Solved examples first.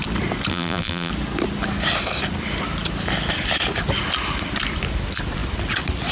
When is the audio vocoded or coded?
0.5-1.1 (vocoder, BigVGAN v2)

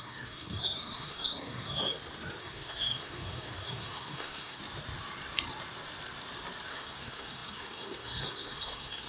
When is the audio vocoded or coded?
0.0-1.9 (codec, SNAC); 2.4-4.6; 6.7-9.1

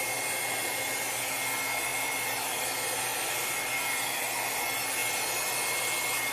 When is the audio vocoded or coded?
1.9-2.6 (vocoder, BigVGAN v2); 3.1-4.2

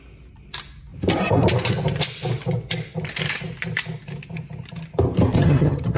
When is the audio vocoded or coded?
5.4-6.0 (vocoder, HiFi-GAN)

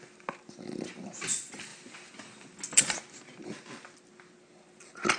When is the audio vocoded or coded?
none